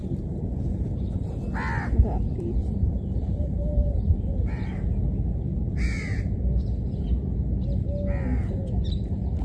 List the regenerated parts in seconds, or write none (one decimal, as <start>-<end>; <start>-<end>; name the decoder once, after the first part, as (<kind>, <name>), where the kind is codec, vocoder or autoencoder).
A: 2.6-6.4 (vocoder, BigVGAN v2)